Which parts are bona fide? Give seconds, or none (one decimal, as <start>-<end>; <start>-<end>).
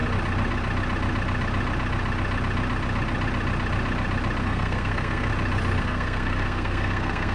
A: 0.0-4.4; 5.3-5.8